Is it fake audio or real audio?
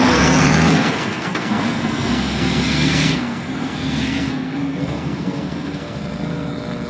fake